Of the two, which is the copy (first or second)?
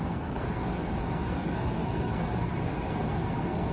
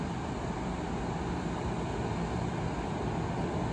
first